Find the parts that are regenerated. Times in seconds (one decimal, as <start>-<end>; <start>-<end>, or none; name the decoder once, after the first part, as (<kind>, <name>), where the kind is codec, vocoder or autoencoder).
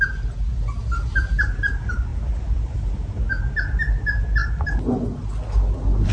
none